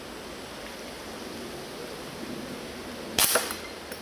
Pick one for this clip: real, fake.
real